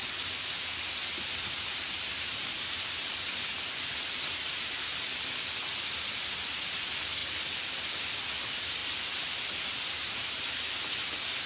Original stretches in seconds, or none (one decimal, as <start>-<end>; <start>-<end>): 7.2-8.0; 8.8-9.6